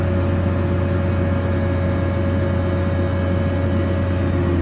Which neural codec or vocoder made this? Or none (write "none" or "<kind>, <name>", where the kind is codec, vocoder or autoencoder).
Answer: none